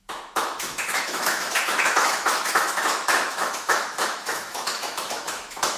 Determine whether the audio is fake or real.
fake